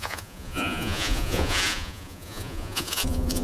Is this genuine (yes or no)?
no